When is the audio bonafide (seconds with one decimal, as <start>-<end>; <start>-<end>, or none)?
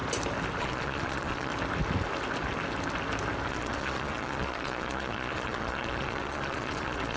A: 0.0-0.6; 1.5-3.5